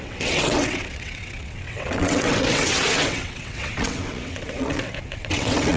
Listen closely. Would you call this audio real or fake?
fake